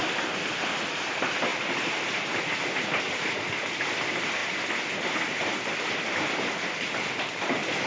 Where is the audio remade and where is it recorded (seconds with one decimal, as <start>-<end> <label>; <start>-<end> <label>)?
0.0-7.9 recorded